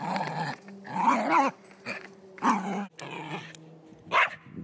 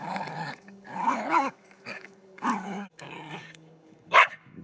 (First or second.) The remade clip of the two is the second